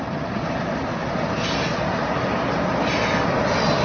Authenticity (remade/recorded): recorded